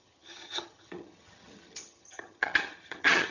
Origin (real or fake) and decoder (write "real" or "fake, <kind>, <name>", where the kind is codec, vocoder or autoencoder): fake, vocoder, HiFi-GAN